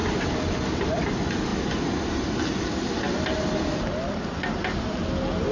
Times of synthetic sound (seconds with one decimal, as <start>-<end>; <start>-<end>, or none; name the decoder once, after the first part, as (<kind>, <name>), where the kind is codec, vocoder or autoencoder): none